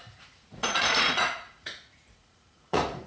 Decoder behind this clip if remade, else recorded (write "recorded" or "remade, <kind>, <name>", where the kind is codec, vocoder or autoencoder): remade, vocoder, Vocos